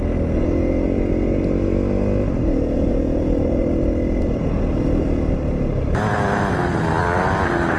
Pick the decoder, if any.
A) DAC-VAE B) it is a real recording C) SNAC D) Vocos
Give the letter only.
B